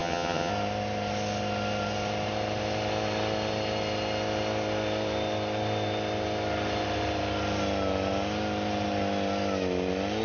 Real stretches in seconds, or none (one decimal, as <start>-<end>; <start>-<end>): 0.5-10.2